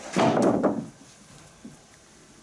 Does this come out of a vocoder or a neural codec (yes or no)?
no